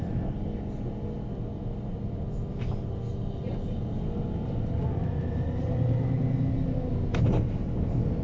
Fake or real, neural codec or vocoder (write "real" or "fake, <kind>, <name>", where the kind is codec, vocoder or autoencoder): real